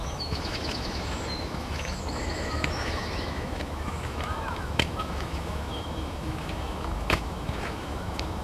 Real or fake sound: fake